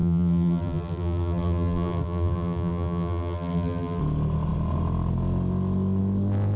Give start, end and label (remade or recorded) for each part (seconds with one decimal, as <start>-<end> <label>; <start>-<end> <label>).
0.0-4.0 remade; 4.0-6.6 recorded